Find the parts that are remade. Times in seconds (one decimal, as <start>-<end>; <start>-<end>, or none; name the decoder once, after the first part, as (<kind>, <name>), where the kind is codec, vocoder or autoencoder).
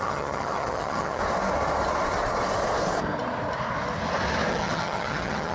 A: 0.0-1.2 (vocoder, HiFi-GAN); 4.5-5.5